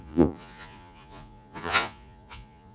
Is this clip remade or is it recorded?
remade